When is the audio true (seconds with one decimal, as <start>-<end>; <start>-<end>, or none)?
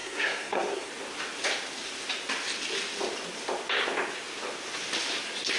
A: 0.9-5.6